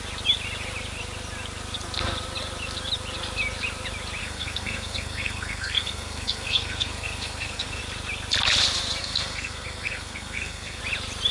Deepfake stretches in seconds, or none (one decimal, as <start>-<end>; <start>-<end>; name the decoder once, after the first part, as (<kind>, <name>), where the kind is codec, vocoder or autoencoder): 4.2-7.8 (codec, SNAC); 9.0-10.8